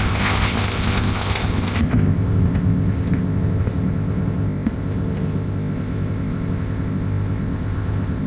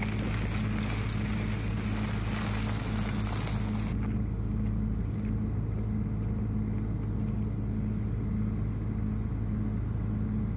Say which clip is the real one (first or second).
second